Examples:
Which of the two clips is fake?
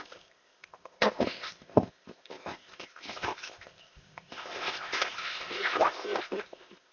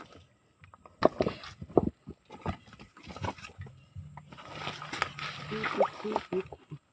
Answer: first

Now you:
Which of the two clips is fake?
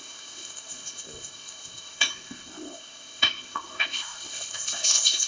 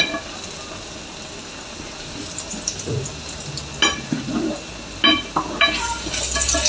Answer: first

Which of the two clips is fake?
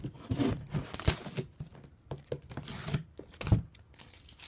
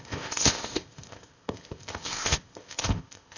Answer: second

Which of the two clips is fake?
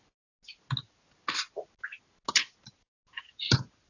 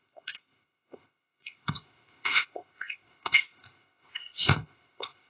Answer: second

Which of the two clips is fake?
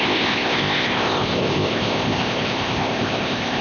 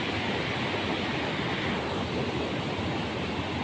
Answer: first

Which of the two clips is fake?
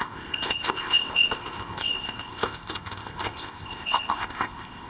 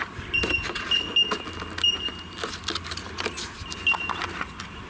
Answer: first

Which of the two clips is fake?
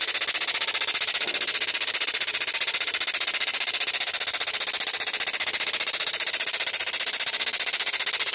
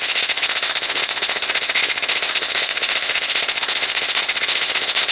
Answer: second